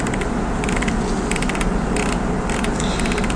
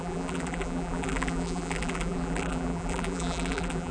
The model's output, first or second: second